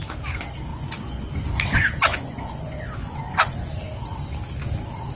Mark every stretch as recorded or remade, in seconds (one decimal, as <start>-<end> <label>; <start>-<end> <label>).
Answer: 0.0-0.7 recorded; 0.7-1.3 remade; 1.3-2.1 recorded; 2.1-3.7 remade; 3.7-5.2 recorded